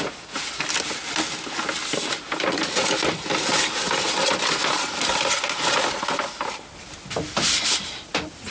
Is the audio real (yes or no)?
yes